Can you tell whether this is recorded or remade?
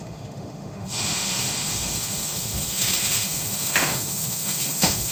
remade